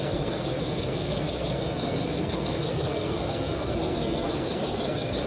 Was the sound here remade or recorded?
remade